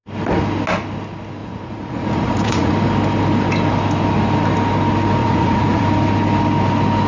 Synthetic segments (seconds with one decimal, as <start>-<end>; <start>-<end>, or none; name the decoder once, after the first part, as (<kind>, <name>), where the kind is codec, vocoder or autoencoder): 1.4-2.7 (vocoder, Vocos); 5.2-5.8